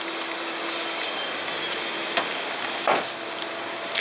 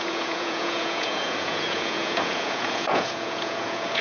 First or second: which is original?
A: first